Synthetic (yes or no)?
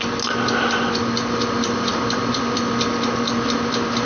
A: no